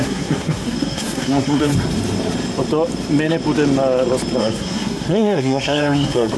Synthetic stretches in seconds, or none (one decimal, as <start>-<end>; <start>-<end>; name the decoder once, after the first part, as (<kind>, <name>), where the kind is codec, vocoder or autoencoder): 0.0-1.7 (codec, SNAC); 4.4-6.4